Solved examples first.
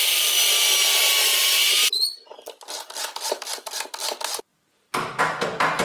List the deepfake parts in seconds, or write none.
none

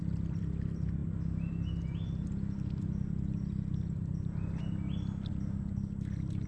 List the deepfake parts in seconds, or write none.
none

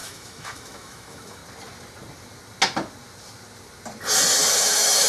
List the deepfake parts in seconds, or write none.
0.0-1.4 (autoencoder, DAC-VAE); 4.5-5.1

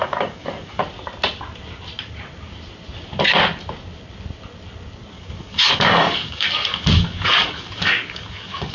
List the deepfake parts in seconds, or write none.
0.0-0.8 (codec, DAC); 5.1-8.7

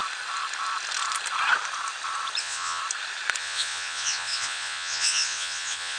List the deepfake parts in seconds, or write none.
2.4-2.8 (vocoder, Vocos); 3.4-6.0

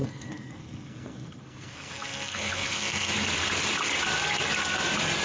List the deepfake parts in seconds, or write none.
0.0-3.1 (codec, SNAC)